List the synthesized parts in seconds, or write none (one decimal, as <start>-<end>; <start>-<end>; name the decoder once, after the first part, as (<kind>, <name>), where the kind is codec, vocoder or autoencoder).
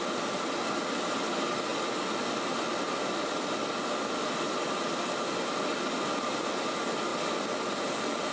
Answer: none